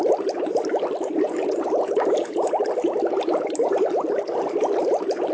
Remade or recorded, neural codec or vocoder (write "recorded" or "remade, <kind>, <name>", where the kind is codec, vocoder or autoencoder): recorded